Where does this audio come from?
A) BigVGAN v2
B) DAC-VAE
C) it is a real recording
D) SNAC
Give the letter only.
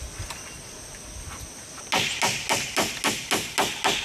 C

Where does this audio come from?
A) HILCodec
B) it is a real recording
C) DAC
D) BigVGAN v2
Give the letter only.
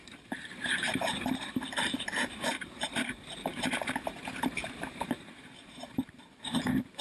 D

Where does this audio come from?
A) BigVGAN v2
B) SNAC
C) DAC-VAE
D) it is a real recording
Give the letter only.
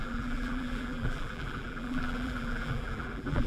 A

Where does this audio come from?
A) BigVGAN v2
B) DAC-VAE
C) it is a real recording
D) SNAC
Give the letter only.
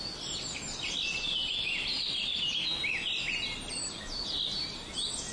C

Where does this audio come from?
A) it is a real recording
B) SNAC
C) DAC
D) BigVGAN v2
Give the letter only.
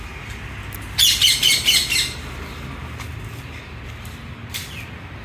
A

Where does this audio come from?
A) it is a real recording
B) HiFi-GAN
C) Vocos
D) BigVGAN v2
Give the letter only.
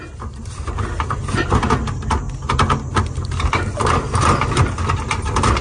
A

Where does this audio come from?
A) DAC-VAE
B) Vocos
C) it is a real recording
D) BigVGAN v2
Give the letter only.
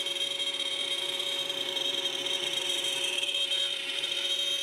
D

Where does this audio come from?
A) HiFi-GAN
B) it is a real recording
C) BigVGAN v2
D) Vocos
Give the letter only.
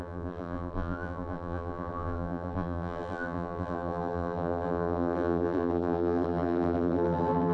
C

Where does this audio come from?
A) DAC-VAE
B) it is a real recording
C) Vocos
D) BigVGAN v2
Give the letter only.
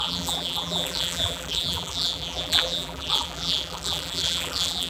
D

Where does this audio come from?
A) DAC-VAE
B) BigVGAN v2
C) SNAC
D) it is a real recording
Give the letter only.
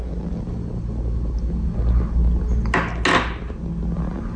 D